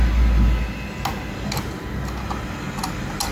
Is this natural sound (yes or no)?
yes